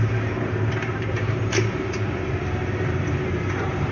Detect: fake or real fake